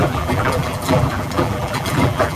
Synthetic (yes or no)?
yes